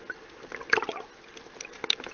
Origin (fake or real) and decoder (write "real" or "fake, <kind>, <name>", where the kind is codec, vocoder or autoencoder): real